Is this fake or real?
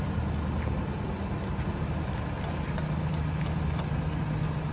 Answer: real